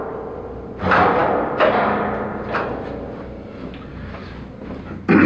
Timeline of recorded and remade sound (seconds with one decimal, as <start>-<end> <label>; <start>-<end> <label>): 0.0-5.3 recorded